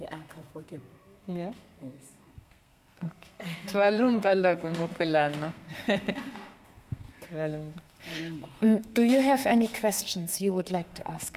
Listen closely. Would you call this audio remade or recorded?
remade